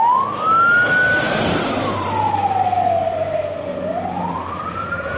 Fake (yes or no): no